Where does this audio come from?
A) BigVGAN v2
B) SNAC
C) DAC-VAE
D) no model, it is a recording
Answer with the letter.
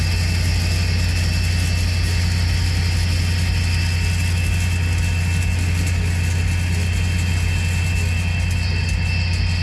D